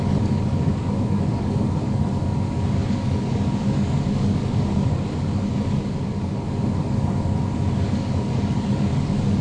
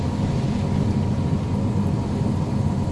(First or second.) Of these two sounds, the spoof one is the first